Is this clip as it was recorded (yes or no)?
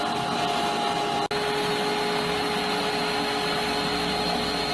yes